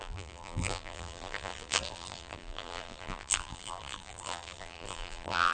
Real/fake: fake